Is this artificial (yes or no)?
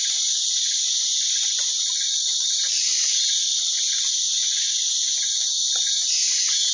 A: no